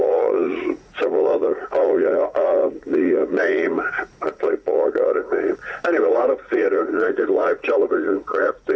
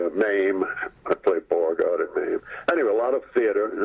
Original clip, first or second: second